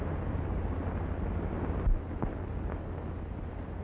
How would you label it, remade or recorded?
recorded